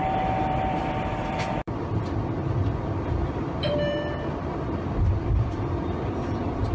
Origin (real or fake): fake